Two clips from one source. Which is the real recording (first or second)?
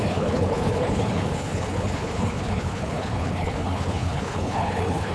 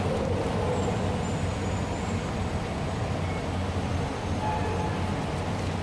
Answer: second